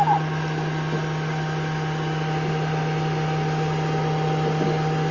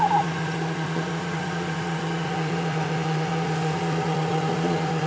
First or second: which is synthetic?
second